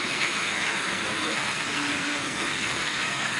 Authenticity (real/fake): fake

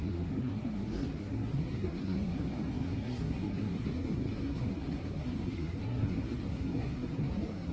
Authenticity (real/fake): fake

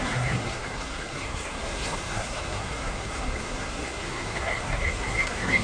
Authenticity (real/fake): fake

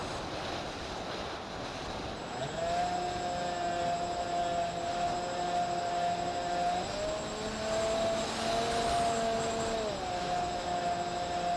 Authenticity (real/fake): real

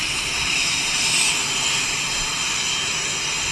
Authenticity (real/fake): real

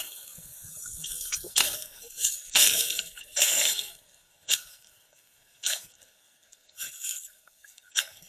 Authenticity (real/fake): fake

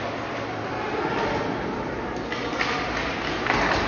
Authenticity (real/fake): real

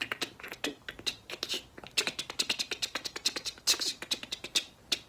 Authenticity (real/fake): real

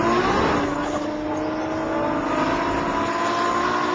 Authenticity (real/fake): real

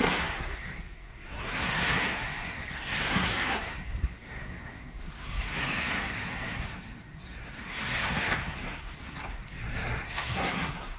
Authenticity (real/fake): fake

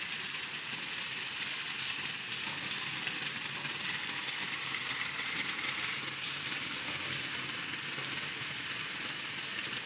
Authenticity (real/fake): real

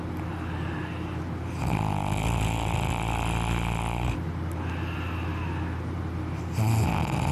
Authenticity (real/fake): real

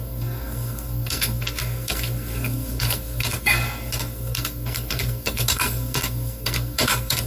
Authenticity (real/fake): fake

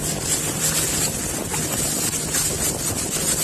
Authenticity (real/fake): real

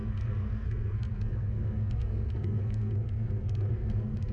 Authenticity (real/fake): fake